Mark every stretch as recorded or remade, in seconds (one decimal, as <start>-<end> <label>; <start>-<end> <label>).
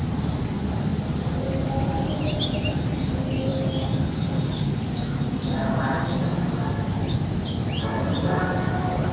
0.0-9.1 recorded